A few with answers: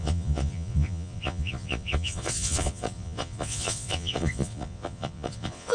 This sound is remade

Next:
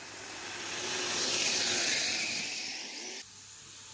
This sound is recorded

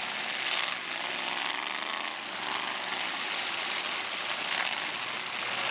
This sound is recorded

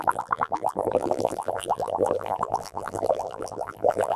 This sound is remade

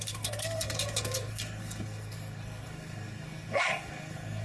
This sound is remade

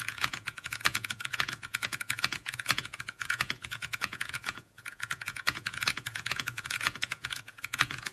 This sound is remade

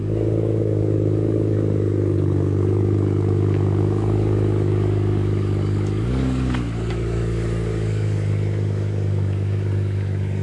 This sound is remade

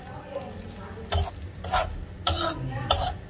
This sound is recorded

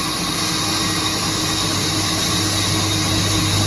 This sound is recorded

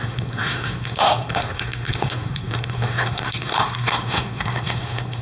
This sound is remade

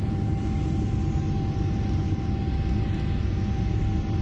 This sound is recorded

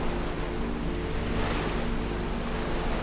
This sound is recorded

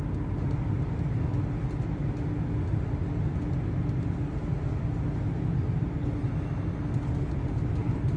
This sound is recorded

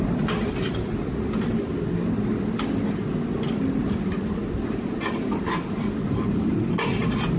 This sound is recorded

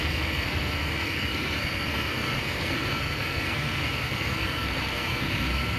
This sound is remade